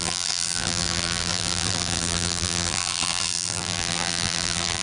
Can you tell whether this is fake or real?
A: fake